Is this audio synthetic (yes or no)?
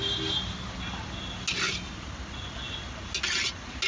no